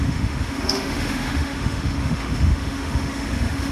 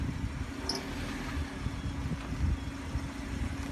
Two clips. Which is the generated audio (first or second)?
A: first